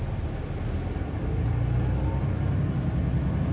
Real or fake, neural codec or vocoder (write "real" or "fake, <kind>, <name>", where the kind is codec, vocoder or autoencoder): real